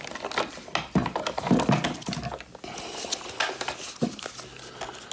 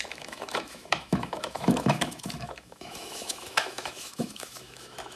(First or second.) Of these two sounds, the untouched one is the first